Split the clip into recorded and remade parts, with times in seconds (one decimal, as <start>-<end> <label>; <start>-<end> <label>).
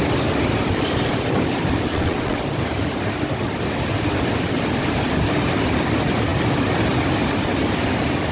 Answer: 0.0-1.9 recorded; 1.9-2.4 remade; 2.4-8.3 recorded